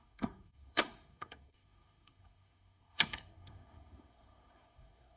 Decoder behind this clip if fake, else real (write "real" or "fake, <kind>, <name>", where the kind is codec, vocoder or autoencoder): fake, codec, SNAC